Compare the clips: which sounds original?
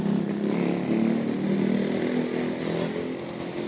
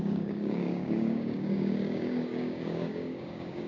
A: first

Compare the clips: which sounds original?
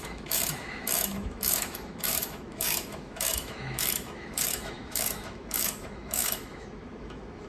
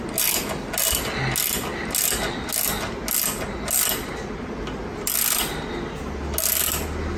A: second